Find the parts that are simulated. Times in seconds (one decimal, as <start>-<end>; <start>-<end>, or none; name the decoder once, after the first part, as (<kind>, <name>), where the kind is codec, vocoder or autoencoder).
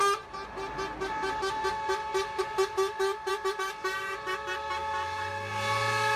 none